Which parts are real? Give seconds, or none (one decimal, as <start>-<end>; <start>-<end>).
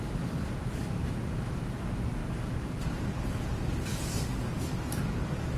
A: 2.2-3.3